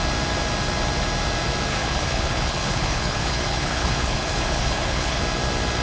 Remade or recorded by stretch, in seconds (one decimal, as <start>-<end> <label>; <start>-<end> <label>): 0.0-1.7 recorded; 1.7-5.2 remade; 5.2-5.8 recorded